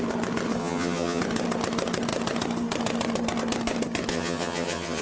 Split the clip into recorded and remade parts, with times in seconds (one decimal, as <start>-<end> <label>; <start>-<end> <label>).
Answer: 0.0-0.6 recorded; 0.6-1.2 remade; 1.2-4.1 recorded; 4.1-5.0 remade